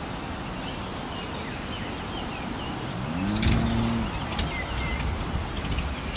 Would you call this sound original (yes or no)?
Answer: yes